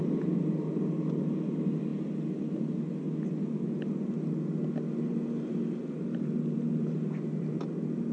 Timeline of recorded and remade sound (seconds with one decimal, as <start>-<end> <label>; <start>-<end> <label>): 0.0-0.7 recorded; 0.7-1.9 remade; 1.9-6.2 recorded; 6.2-8.1 remade